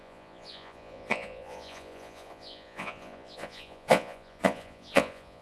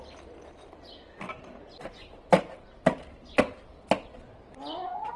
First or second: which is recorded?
second